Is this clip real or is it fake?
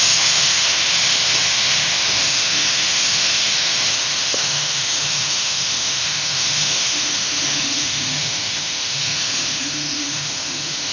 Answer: fake